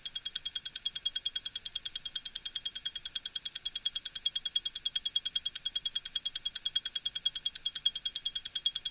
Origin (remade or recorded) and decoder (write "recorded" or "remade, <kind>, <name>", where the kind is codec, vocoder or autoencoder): recorded